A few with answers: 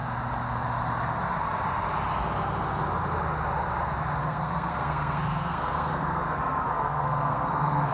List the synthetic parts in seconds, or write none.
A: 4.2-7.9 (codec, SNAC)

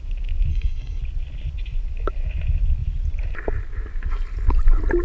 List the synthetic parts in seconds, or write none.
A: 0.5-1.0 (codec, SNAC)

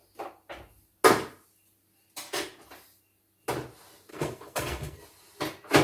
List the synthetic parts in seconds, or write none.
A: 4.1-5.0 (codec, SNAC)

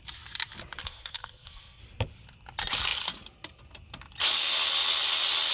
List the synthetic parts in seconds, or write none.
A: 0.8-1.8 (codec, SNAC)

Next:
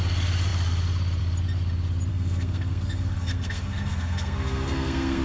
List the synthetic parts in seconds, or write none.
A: 2.1-5.2 (codec, SNAC)

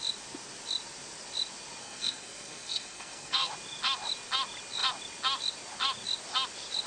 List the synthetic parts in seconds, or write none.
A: 1.8-3.5 (codec, SNAC)

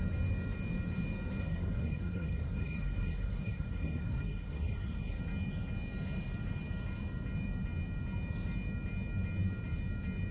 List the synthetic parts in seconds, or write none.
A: 1.4-5.2 (codec, SNAC)